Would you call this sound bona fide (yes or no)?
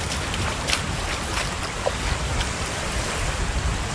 no